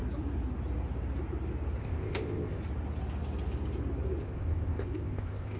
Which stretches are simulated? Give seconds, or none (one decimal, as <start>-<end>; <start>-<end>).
1.8-2.6; 4.2-5.6

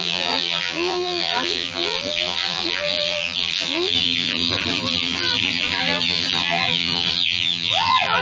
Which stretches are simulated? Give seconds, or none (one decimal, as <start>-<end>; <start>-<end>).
0.0-8.2

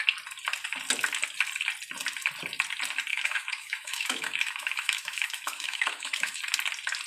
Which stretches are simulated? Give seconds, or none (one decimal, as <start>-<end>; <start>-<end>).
3.1-6.4

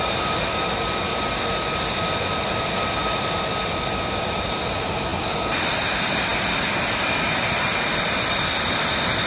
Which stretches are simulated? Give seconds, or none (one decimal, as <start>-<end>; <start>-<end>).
none

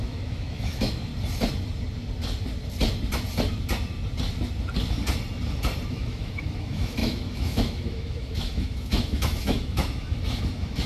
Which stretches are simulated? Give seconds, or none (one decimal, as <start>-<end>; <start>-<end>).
0.0-1.1; 5.9-10.9

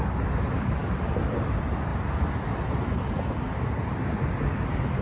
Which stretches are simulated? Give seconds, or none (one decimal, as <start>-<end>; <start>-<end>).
none